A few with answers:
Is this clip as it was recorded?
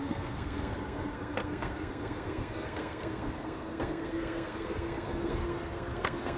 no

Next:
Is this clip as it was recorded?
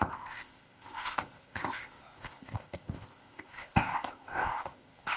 no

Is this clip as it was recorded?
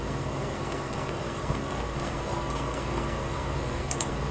no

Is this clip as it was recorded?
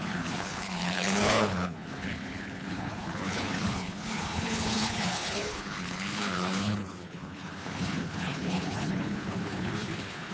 no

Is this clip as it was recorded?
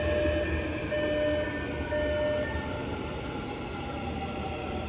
yes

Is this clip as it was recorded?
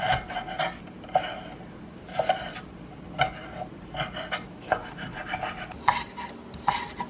yes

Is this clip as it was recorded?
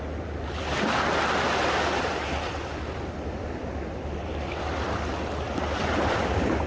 no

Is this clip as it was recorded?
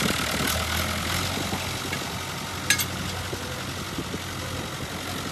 yes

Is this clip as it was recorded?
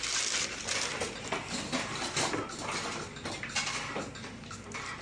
yes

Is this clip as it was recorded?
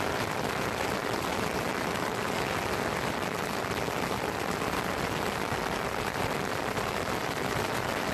yes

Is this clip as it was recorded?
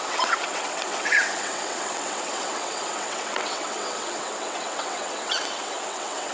no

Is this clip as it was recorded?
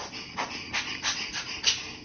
yes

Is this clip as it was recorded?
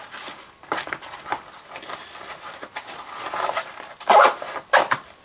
yes